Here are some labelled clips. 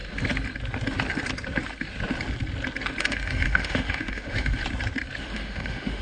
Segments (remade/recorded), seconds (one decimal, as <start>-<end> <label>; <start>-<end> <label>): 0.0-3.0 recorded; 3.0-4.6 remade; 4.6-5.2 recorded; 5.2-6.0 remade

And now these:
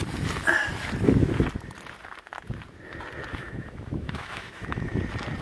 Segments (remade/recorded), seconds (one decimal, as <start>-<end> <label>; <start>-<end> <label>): 0.0-3.3 recorded; 3.3-4.9 remade; 4.9-5.4 recorded

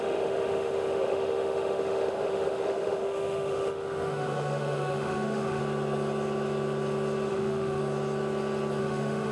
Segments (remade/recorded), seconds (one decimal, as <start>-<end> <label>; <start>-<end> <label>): 0.0-5.6 remade; 5.6-7.3 recorded; 7.3-7.8 remade; 7.8-8.8 recorded; 8.8-9.3 remade

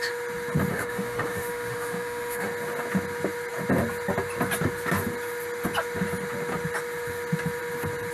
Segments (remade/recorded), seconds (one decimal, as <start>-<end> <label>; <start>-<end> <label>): 0.0-0.7 recorded; 0.7-2.5 remade; 2.5-8.1 recorded